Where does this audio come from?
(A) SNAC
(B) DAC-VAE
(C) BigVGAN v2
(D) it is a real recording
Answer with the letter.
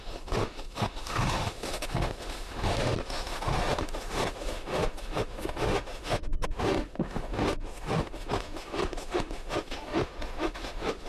B